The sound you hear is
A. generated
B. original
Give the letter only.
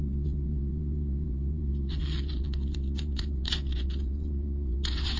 A